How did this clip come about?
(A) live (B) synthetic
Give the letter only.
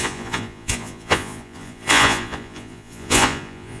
B